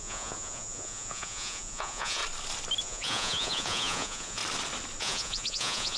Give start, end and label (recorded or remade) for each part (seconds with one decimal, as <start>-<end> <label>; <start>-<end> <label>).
0.0-2.2 remade; 2.2-2.8 recorded; 2.8-4.4 remade; 4.4-5.0 recorded; 5.0-6.0 remade